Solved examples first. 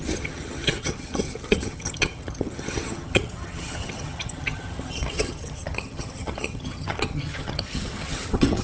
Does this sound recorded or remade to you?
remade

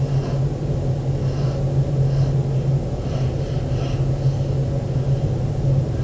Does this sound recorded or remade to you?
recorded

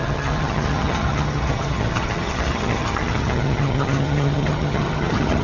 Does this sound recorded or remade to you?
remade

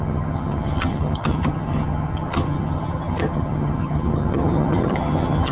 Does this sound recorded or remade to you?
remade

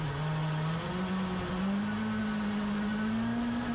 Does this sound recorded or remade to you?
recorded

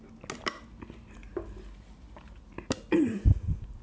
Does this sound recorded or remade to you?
recorded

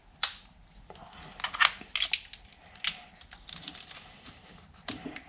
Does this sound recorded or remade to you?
recorded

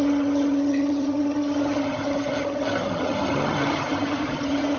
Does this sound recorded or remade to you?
remade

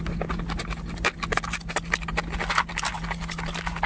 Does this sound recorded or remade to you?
recorded